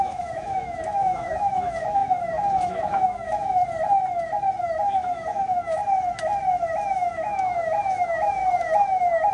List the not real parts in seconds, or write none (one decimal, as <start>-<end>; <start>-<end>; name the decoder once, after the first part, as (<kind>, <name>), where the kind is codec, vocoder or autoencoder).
0.0-3.6 (autoencoder, DAC-VAE); 4.6-5.8; 6.9-8.4